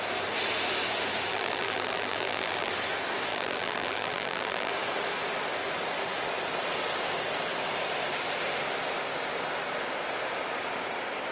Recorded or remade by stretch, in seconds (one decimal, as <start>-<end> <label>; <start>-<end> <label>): 0.0-1.3 recorded; 1.3-2.7 remade; 2.7-3.3 recorded; 3.3-4.7 remade; 4.7-11.3 recorded